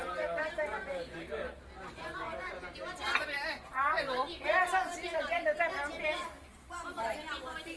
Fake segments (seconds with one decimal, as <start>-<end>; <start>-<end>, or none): 0.0-7.8